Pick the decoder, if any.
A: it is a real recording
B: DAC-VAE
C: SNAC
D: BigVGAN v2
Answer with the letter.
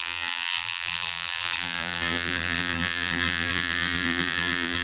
D